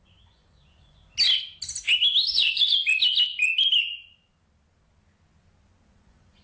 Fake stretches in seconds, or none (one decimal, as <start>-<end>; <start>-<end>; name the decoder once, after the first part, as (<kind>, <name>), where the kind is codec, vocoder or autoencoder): 0.0-1.0 (vocoder, Vocos); 2.3-2.8; 6.0-6.4